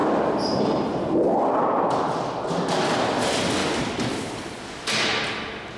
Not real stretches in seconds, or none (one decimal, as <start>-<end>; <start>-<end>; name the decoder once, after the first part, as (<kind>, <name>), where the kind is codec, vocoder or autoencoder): 3.6-4.8 (vocoder, BigVGAN v2)